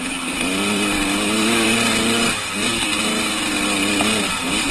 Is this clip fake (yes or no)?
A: no